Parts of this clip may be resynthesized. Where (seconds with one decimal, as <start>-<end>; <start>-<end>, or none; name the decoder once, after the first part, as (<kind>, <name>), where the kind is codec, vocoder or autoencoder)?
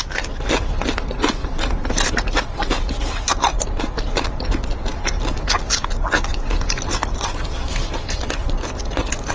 none